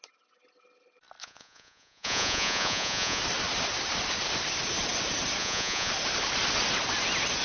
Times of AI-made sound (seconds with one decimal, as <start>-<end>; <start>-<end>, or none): 1.2-3.2; 5.4-5.9